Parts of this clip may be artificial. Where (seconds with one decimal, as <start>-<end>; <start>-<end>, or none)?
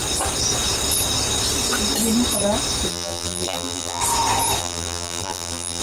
2.9-4.0; 4.6-5.8